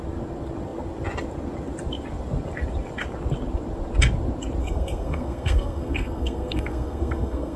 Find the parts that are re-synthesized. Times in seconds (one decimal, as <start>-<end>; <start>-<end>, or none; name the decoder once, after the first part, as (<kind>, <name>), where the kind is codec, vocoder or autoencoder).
4.6-7.6 (codec, SNAC)